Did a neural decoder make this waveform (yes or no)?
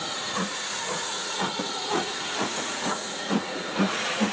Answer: yes